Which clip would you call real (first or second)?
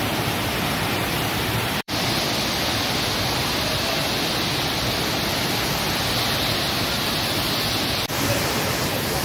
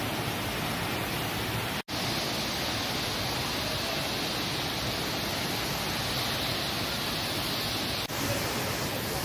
second